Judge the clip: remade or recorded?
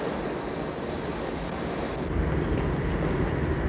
recorded